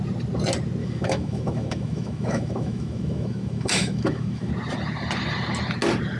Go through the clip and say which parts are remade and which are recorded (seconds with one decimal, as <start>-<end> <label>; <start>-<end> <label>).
0.0-0.8 recorded; 0.8-4.5 remade; 4.5-6.2 recorded

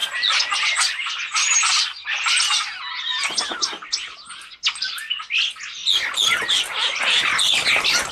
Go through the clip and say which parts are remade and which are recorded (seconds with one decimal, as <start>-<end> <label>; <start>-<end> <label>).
0.0-8.1 recorded

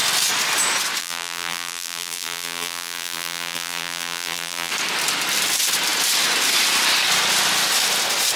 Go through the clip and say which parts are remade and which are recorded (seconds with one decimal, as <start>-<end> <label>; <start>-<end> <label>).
0.0-1.0 recorded; 1.0-4.7 remade; 4.7-8.4 recorded

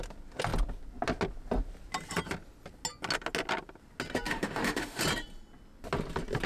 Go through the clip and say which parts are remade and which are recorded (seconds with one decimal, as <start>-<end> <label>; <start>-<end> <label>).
0.0-4.3 recorded; 4.3-5.0 remade; 5.0-6.5 recorded